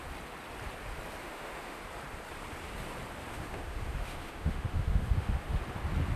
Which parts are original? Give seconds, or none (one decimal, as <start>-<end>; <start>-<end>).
0.0-1.2; 1.8-3.3; 5.6-6.2